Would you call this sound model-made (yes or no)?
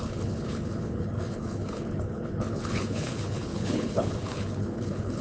yes